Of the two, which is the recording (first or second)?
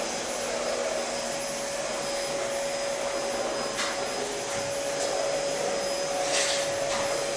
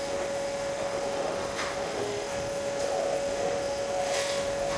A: first